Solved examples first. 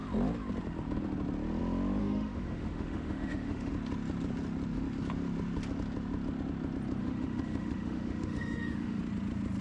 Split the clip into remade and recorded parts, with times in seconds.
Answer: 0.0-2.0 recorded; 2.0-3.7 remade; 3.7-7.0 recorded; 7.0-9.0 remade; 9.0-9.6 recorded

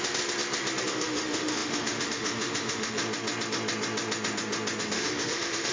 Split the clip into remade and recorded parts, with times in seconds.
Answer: 0.0-0.9 recorded; 0.9-3.0 remade; 3.0-4.8 recorded; 4.8-5.7 remade

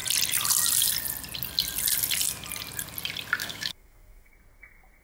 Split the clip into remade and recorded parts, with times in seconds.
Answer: 0.0-3.4 recorded; 3.4-4.3 remade; 4.3-5.0 recorded

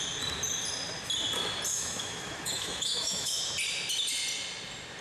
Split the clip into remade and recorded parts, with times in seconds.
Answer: 0.0-1.7 recorded; 1.7-3.4 remade; 3.4-5.0 recorded

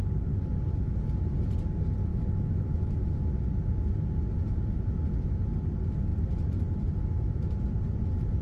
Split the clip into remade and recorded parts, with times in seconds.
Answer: 0.0-2.1 recorded; 2.1-3.5 remade; 3.5-8.4 recorded

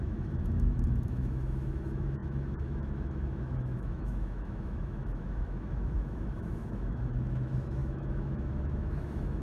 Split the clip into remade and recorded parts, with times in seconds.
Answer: 0.0-9.4 remade

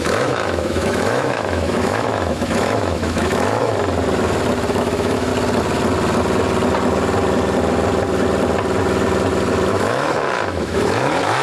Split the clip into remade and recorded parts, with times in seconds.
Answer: 0.0-3.8 remade; 3.8-4.7 recorded; 4.7-5.3 remade; 5.3-9.7 recorded; 9.7-11.4 remade

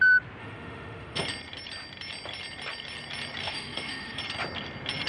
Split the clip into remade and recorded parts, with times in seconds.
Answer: 0.0-0.4 recorded; 0.4-1.2 remade; 1.2-3.4 recorded; 3.4-4.2 remade; 4.2-5.1 recorded